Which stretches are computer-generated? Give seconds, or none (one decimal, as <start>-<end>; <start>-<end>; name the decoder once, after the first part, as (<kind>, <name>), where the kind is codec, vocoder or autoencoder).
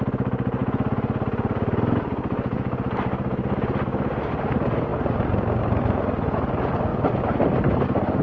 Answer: none